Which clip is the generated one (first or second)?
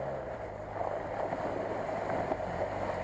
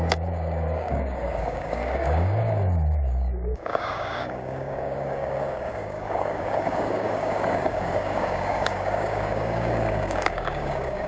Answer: second